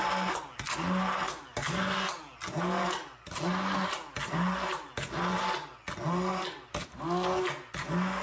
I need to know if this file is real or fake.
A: real